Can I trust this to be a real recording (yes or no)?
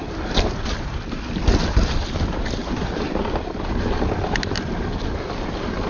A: yes